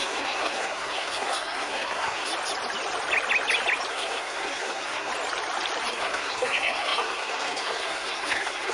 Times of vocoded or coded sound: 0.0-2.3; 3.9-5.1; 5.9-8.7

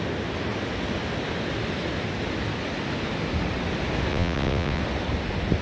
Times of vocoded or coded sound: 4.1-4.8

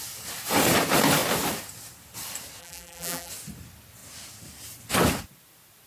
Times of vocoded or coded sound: 2.6-3.3

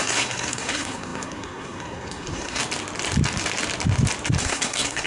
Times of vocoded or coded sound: 0.0-2.6; 4.4-5.1

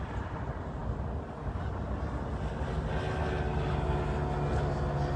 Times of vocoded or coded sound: none

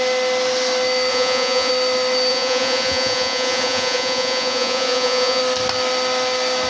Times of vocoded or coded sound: 1.1-1.7; 2.3-5.4

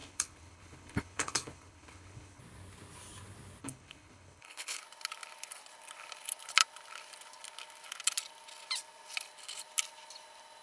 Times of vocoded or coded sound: 0.0-2.4; 3.6-4.8

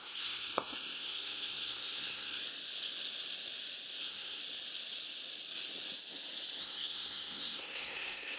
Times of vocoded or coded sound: 0.0-2.4; 4.0-4.4; 6.6-8.4